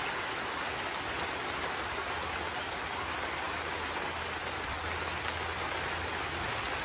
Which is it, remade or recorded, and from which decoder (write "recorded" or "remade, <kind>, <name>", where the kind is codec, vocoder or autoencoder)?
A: recorded